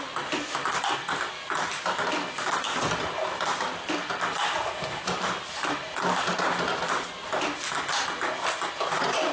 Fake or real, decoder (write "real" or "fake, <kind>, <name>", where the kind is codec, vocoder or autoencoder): real